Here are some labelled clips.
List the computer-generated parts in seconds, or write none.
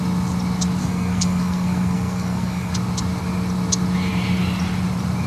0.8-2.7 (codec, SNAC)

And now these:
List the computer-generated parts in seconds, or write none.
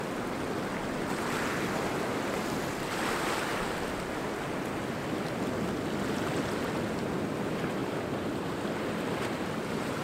none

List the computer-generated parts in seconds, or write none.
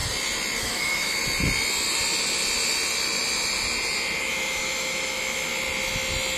0.6-1.2 (autoencoder, DAC-VAE); 4.2-5.5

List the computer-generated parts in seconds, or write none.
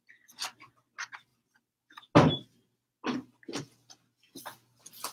none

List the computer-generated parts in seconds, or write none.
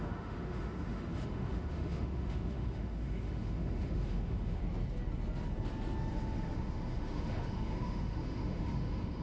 0.0-4.6 (autoencoder, DAC-VAE); 6.1-9.2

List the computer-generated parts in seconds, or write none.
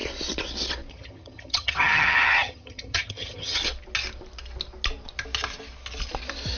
0.9-3.6 (vocoder, HiFi-GAN)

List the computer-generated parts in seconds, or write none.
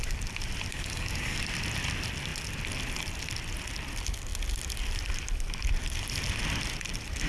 0.7-1.4 (codec, DAC)